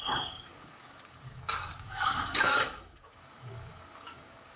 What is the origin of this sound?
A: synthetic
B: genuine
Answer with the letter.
A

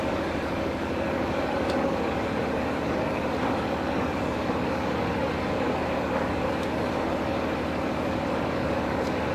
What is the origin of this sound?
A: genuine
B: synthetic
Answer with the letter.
B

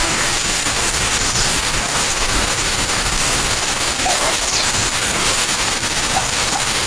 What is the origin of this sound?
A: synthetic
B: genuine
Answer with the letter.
A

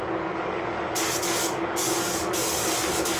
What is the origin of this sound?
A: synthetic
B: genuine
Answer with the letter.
A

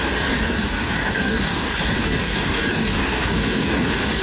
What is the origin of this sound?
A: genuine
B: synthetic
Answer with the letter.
B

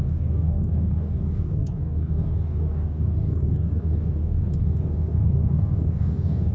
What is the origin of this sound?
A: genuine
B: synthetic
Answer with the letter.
B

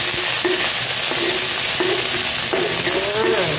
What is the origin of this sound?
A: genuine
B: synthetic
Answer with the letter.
A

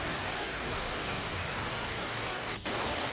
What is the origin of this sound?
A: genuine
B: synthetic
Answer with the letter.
B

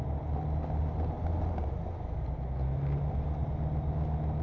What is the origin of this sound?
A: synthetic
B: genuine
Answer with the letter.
B